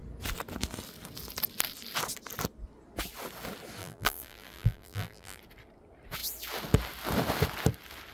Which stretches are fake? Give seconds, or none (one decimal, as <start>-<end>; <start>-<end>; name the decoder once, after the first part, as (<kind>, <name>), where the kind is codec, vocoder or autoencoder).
3.8-5.4 (vocoder, BigVGAN v2)